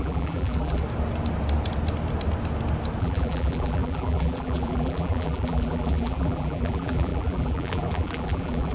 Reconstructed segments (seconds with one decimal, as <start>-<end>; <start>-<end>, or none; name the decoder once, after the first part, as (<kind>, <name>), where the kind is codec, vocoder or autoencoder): 0.0-0.8 (vocoder, BigVGAN v2); 3.0-8.7